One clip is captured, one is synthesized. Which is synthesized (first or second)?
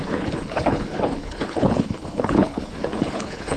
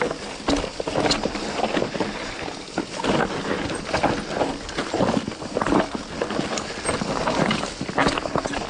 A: first